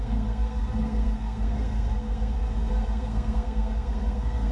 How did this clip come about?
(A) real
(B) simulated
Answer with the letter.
B